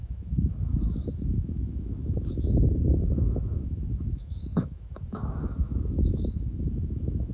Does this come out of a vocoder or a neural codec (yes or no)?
yes